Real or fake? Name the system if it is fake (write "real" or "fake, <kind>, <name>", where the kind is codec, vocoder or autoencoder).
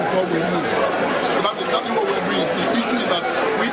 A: real